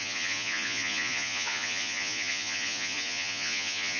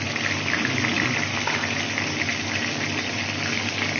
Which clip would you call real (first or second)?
second